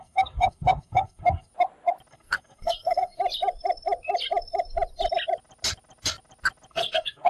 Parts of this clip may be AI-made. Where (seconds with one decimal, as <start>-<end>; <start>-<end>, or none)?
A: 0.0-1.5; 2.1-3.2; 6.7-7.3